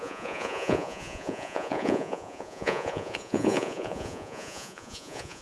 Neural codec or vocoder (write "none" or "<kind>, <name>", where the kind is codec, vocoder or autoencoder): vocoder, Vocos